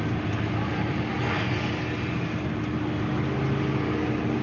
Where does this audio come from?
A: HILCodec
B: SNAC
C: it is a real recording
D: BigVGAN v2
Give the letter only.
C